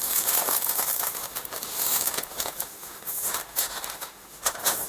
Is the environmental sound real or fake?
fake